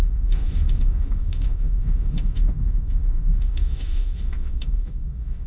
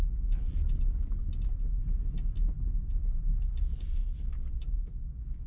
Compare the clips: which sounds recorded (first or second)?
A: second